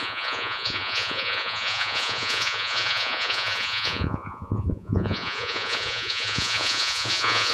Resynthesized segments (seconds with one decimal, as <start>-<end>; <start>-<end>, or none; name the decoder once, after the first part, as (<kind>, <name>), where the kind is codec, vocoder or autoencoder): 0.0-7.5 (vocoder, Vocos)